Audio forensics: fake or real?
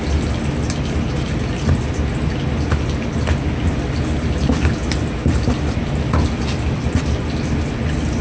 real